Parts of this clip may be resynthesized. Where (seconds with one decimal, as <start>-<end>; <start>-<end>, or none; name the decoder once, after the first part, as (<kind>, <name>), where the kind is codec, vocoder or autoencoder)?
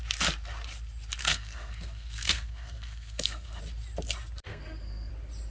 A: 1.2-3.6 (codec, SNAC); 4.5-5.1